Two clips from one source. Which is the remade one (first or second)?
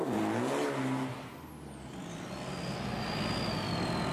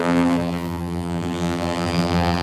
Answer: second